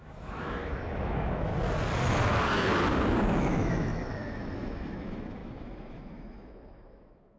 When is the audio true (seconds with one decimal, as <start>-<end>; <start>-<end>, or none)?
1.5-2.9

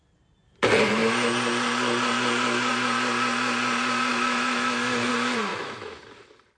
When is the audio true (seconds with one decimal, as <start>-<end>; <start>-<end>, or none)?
0.0-4.1; 5.1-5.5; 6.1-6.6

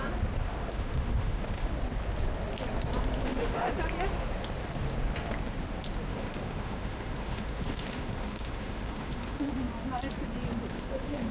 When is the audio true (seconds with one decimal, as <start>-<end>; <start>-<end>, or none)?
0.0-0.4; 1.7-3.2; 3.7-6.1; 9.5-10.7

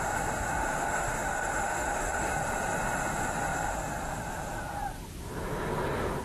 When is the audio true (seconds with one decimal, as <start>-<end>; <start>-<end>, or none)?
0.0-0.6; 2.3-6.2